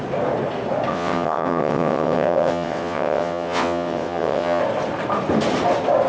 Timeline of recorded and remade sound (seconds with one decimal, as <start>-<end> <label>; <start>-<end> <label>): 0.0-0.9 recorded; 0.9-4.6 remade; 4.6-6.1 recorded